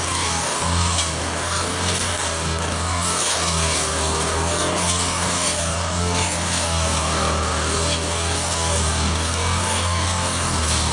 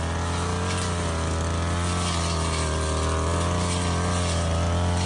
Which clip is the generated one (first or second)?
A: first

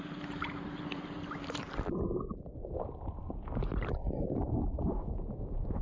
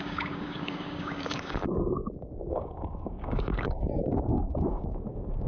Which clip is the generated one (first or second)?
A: second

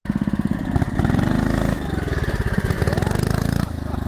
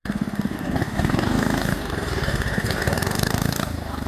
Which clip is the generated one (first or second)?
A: second